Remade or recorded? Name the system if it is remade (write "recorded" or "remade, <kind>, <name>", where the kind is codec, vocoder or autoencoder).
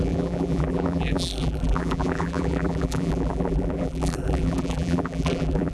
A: remade, vocoder, BigVGAN v2